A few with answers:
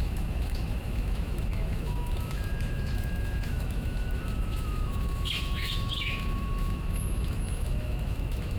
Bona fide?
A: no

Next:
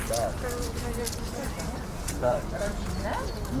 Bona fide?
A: yes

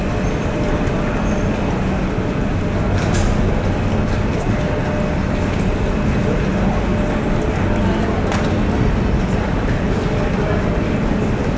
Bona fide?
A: yes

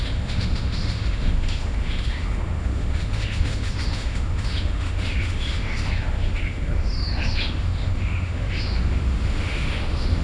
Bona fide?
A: no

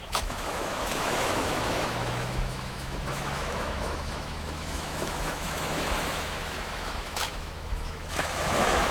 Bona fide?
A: no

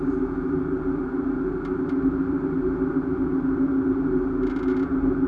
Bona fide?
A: yes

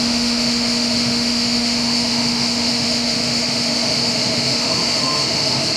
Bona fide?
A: no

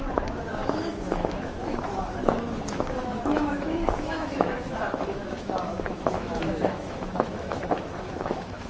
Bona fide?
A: no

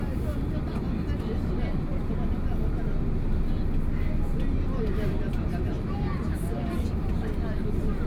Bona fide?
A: yes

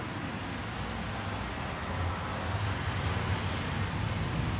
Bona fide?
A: yes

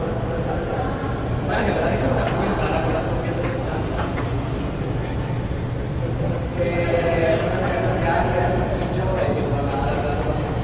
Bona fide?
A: yes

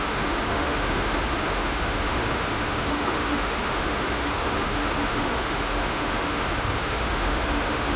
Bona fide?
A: no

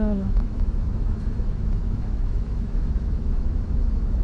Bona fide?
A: no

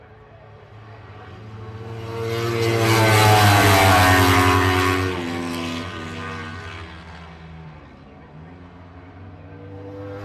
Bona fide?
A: yes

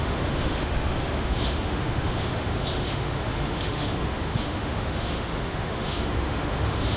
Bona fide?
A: no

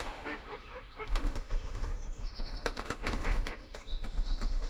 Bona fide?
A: no